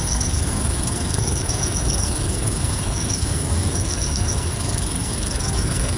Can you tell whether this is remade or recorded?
remade